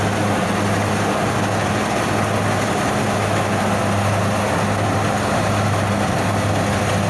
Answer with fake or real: real